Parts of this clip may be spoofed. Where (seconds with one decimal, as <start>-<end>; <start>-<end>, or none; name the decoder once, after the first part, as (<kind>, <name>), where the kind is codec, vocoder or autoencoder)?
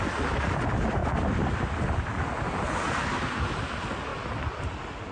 none